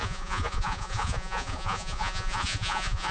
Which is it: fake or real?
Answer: fake